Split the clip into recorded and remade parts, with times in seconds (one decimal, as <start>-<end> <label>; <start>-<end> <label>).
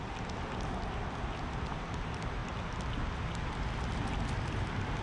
0.0-5.0 recorded